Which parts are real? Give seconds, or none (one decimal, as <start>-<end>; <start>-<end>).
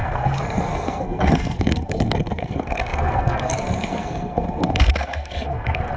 none